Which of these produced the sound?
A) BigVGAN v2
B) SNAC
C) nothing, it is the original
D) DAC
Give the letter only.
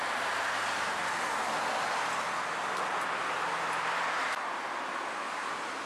C